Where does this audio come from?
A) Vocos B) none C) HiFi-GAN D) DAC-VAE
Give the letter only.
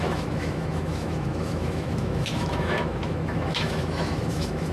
D